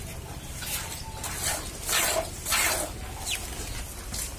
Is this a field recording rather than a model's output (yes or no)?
yes